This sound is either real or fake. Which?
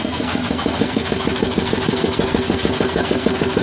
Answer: fake